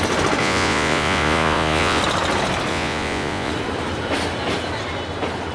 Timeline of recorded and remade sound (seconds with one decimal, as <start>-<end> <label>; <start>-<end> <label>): 0.0-0.4 recorded; 0.4-2.0 remade; 2.0-2.7 recorded; 2.7-3.5 remade; 3.5-5.5 recorded